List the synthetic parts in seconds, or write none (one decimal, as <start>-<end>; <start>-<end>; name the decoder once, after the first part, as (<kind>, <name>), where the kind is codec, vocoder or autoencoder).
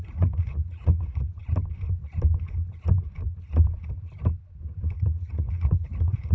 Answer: 0.0-1.4 (vocoder, Vocos); 4.8-6.3